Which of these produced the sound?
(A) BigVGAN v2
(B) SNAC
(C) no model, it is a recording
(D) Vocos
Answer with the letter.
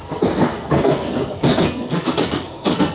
B